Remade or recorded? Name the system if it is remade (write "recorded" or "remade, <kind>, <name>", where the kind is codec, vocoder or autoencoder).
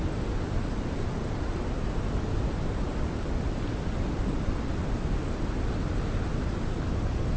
recorded